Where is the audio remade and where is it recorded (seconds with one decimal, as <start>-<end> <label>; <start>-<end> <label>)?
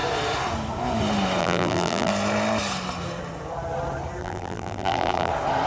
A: 0.0-1.4 recorded; 1.4-2.1 remade; 2.1-4.2 recorded; 4.2-5.3 remade; 5.3-5.7 recorded